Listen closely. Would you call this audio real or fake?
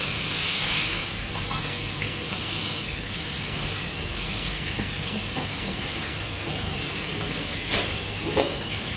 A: fake